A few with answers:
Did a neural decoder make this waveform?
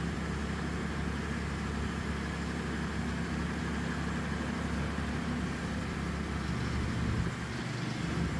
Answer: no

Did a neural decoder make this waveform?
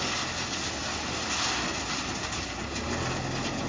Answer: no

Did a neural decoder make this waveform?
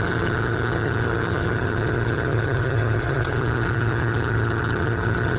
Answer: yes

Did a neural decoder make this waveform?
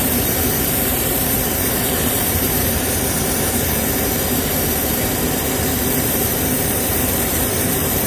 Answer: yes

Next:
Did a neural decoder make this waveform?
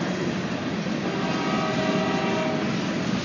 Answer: no